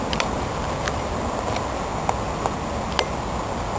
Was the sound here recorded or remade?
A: recorded